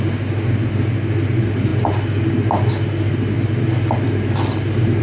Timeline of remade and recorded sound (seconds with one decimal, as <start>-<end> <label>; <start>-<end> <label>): 0.0-5.0 recorded

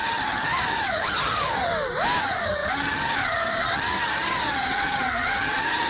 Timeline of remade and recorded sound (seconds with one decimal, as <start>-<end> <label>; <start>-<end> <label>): 0.0-1.7 remade; 1.7-2.2 recorded; 2.2-5.9 remade

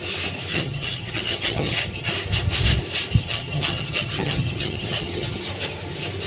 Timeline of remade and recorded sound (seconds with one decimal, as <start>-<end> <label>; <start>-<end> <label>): 0.0-0.5 recorded; 0.5-2.1 remade; 2.1-3.2 recorded; 3.2-5.4 remade; 5.4-6.3 recorded

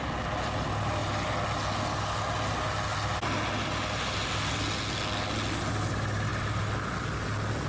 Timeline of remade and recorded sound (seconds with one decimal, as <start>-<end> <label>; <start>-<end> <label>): 0.0-7.7 recorded

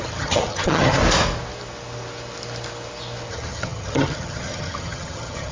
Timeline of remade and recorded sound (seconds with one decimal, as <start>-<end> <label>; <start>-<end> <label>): 0.0-1.0 remade; 1.0-3.3 recorded; 3.3-5.5 remade